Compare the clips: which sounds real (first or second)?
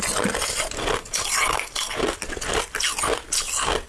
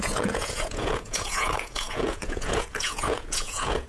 first